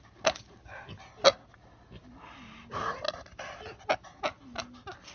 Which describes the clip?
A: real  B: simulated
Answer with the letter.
A